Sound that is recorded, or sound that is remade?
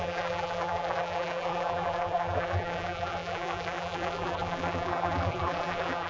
remade